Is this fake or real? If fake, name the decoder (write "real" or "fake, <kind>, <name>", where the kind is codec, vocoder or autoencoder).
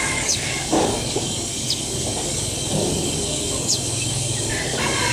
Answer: fake, codec, DAC